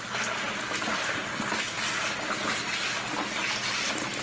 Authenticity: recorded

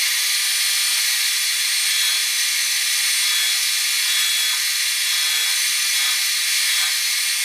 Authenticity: recorded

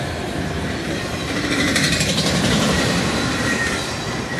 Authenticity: remade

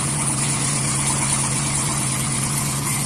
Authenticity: remade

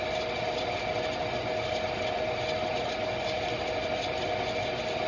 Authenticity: recorded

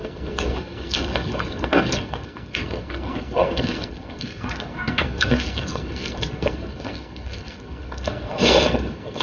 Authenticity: remade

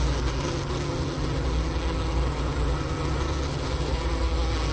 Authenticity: recorded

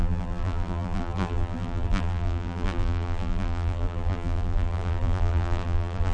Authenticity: remade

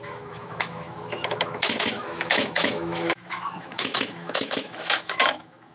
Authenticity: remade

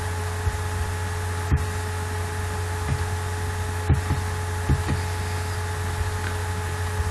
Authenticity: recorded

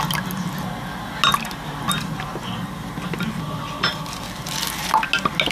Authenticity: recorded